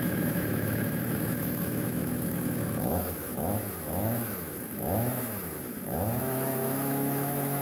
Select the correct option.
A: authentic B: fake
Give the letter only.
B